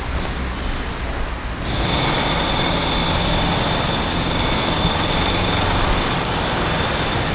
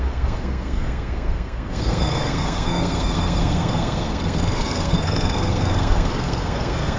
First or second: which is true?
first